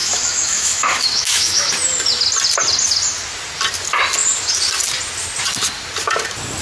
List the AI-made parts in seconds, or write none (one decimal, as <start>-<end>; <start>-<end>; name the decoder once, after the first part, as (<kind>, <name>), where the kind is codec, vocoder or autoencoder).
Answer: 0.0-1.7 (autoencoder, DAC-VAE)